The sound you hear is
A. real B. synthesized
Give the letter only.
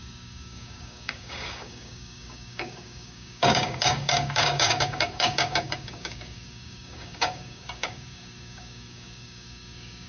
B